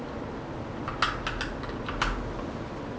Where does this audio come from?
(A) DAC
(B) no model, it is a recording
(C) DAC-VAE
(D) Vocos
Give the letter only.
B